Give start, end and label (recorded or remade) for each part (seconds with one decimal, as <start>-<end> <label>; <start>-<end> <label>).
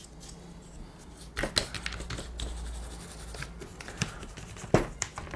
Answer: 0.0-5.4 recorded